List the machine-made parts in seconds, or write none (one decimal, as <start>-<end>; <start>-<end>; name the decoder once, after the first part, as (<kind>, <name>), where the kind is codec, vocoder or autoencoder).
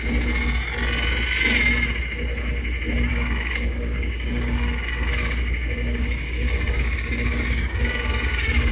3.1-8.7 (codec, DAC)